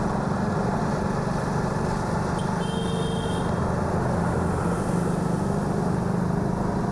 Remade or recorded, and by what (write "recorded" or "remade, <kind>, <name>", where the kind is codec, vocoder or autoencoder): recorded